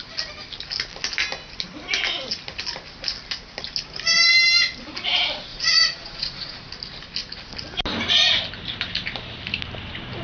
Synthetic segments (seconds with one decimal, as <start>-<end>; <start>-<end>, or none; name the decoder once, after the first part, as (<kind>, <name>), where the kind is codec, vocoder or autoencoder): 5.5-6.7 (vocoder, Vocos)